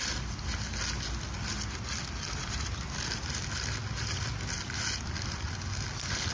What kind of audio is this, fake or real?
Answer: real